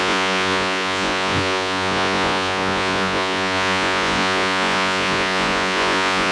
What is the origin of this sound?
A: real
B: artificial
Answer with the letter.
B